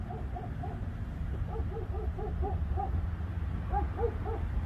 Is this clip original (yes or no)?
yes